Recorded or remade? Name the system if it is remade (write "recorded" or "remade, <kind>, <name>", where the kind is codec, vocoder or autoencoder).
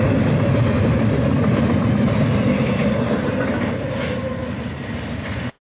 recorded